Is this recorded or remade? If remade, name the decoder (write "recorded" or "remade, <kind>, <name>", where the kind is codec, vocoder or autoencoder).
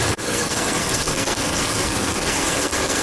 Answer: remade, codec, SNAC